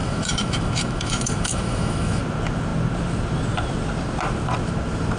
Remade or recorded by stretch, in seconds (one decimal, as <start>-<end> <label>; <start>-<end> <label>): 0.0-2.2 remade; 2.2-5.2 recorded